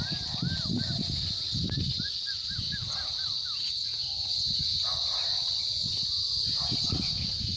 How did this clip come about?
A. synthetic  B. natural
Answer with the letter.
B